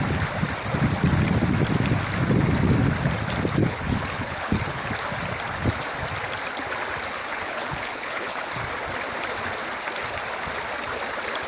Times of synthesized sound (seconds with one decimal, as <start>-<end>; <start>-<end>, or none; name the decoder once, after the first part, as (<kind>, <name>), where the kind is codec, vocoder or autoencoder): 3.6-4.9 (codec, HILCodec); 7.2-8.5